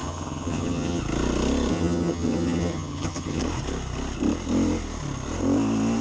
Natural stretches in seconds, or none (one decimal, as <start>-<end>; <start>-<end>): 1.0-1.7; 3.4-6.0